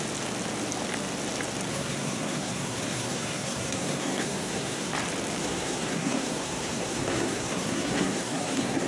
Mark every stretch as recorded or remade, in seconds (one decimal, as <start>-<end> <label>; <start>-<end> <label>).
0.0-1.7 recorded; 1.7-4.9 remade; 4.9-5.4 recorded; 5.4-8.9 remade